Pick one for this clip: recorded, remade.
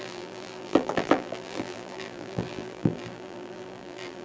remade